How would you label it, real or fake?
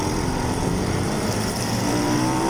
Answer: fake